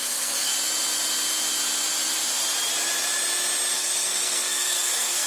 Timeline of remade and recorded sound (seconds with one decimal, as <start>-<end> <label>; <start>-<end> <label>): 0.0-0.5 remade; 0.5-3.7 recorded; 3.7-5.3 remade